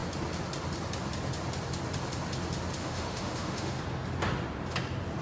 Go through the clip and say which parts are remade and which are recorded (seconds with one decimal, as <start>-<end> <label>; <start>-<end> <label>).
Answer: 0.0-2.8 recorded; 2.8-3.8 remade; 3.8-5.2 recorded